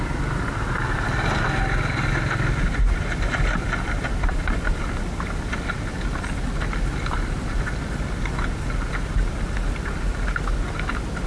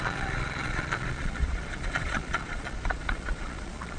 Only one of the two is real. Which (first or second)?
first